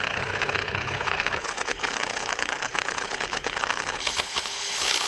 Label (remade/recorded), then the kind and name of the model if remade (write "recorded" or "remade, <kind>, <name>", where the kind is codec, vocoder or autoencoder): remade, codec, HILCodec